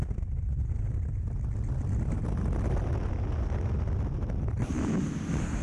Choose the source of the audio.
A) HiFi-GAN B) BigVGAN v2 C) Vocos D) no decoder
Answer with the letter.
D